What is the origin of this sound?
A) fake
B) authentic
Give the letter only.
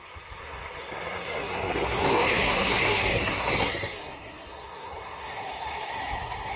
A